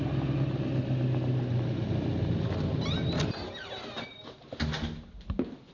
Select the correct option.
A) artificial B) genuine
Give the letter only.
B